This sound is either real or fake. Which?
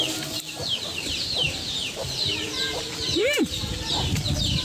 fake